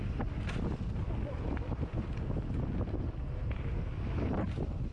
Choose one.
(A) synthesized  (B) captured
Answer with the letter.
B